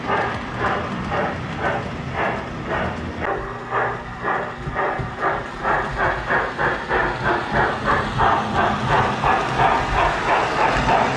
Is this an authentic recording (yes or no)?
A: yes